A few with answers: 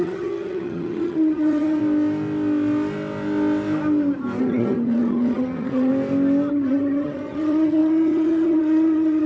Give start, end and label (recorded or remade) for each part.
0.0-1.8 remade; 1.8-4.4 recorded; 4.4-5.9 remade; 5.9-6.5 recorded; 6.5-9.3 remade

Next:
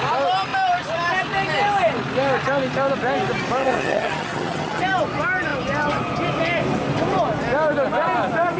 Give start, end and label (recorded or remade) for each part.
0.0-3.6 recorded; 3.6-4.8 remade; 4.8-8.6 recorded

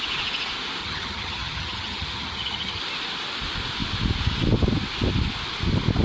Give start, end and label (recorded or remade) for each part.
0.0-0.8 recorded; 0.8-2.8 remade; 2.8-6.0 recorded